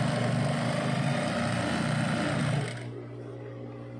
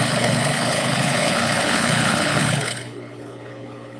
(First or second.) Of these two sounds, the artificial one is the second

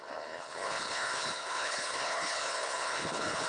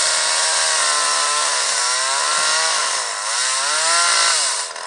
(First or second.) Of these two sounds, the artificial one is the first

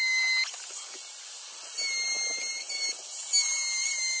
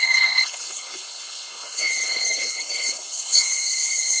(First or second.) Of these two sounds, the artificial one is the second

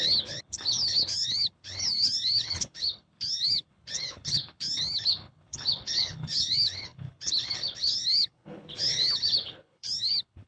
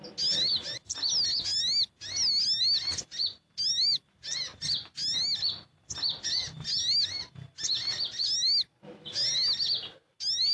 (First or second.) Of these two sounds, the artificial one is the first